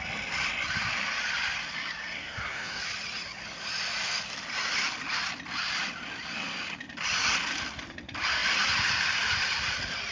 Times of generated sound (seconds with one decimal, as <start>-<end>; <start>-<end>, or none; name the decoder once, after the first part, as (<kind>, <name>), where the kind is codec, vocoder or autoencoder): 2.2-2.8 (codec, SNAC)